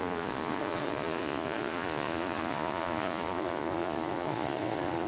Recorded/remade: remade